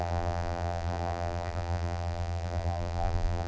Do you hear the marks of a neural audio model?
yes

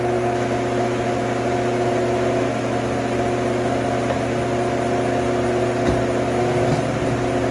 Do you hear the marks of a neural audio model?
no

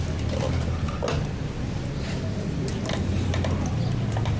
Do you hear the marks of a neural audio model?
no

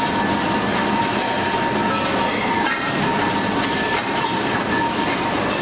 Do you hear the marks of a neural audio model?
no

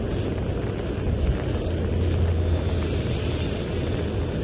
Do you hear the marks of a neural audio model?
no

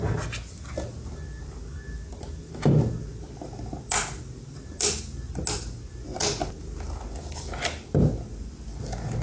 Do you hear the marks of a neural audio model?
no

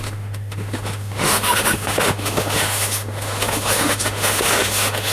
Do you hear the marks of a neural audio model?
yes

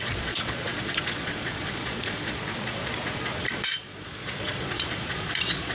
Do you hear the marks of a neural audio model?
yes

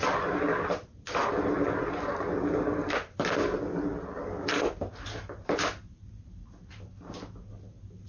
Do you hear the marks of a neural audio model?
no